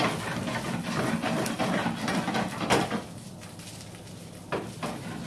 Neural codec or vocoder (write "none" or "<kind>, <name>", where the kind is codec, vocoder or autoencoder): none